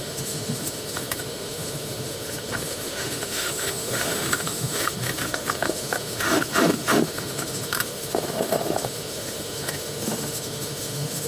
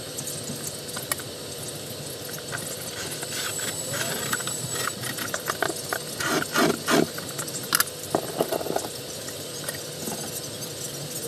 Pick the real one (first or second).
second